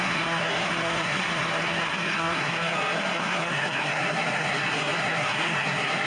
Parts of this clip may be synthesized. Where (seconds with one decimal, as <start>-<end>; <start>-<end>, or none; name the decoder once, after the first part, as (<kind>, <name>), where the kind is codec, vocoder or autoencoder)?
0.0-6.1 (codec, SNAC)